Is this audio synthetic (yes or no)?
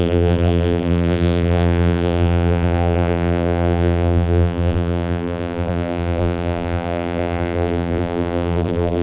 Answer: yes